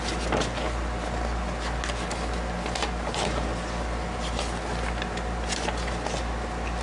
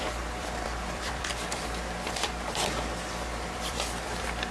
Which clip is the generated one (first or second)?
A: second